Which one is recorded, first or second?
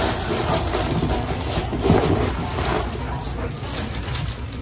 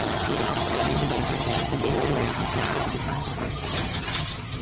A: first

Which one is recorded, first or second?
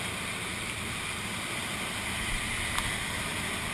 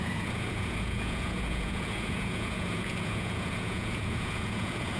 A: first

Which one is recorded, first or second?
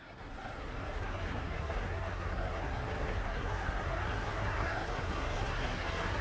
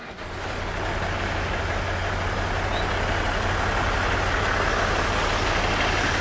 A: second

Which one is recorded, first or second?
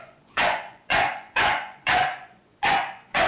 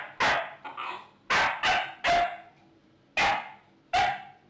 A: second